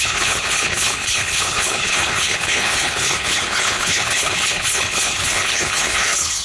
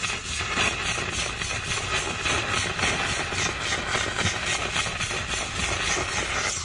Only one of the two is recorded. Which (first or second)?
second